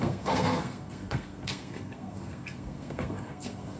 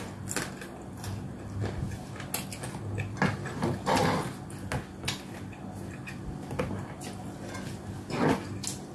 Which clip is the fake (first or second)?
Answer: first